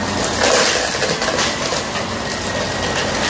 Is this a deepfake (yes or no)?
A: no